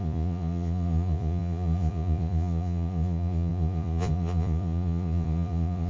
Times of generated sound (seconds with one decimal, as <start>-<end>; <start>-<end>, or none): 0.0-5.9